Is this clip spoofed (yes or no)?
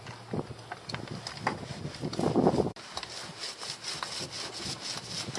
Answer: no